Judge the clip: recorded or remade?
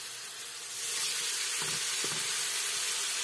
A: recorded